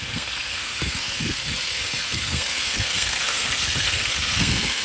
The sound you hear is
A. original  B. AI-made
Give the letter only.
B